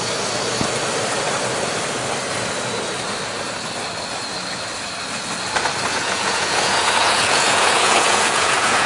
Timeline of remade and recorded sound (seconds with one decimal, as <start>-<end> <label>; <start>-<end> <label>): 0.0-5.9 recorded; 5.9-8.9 remade